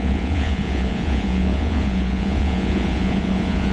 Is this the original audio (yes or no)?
no